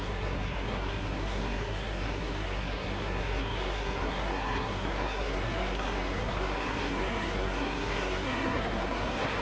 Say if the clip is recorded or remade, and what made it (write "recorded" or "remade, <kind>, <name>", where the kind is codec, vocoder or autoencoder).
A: remade, codec, SNAC